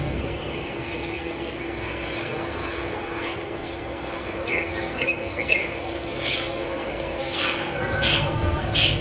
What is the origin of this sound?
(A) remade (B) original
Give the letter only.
A